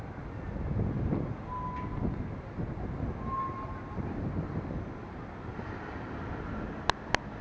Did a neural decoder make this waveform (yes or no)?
no